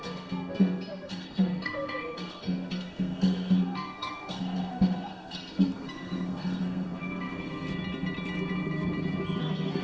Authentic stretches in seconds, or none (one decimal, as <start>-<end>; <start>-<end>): 7.7-9.4